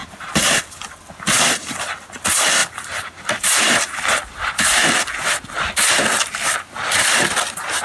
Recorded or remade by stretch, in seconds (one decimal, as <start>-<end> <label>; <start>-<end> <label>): 0.0-7.8 recorded